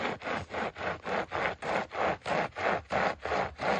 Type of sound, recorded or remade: recorded